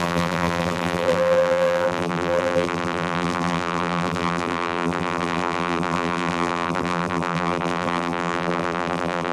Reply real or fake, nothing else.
fake